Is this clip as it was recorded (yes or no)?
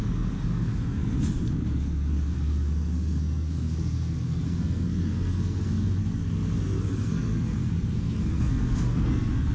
no